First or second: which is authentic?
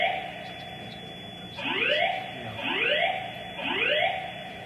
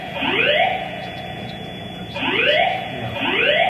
first